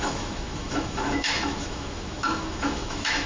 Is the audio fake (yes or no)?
yes